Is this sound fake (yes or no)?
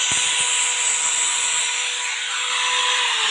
no